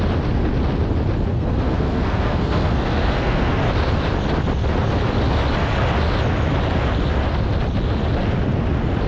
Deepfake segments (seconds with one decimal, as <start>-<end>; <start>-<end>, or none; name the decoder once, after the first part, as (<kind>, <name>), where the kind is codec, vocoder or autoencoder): 1.3-3.5 (codec, SNAC)